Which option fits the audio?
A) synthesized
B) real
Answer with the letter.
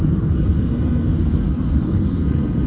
A